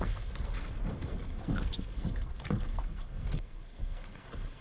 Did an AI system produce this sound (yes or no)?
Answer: yes